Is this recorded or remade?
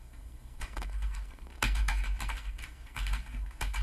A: remade